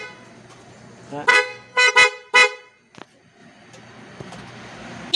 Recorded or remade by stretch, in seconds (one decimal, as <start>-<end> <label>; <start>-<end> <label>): 0.0-1.3 recorded; 1.3-1.9 remade; 1.9-5.2 recorded